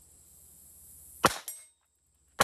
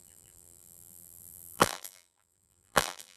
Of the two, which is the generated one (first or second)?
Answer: second